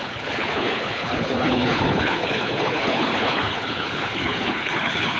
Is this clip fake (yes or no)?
yes